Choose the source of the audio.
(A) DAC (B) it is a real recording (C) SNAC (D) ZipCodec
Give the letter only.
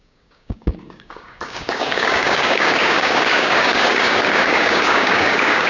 A